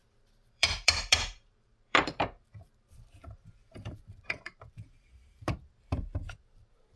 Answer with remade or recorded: remade